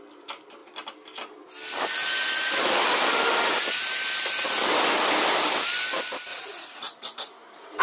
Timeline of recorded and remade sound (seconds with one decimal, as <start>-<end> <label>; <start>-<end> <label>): 0.0-6.3 recorded; 6.3-7.8 remade